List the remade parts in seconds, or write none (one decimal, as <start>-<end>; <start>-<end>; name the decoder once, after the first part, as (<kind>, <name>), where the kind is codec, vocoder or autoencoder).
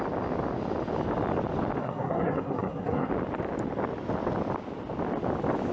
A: 1.8-3.1 (codec, SNAC)